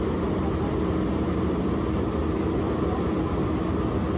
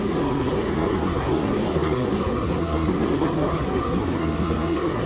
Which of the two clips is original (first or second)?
first